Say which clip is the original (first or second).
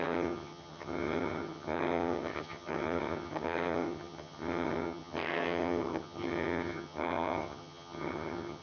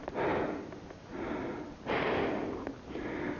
second